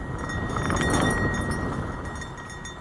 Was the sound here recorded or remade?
recorded